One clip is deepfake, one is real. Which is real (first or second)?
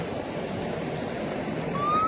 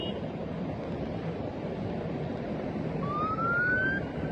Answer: first